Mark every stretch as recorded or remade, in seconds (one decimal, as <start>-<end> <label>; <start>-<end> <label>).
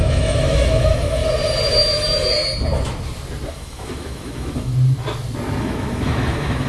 0.0-1.2 remade; 1.2-3.5 recorded; 3.5-4.7 remade; 4.7-5.6 recorded; 5.6-6.7 remade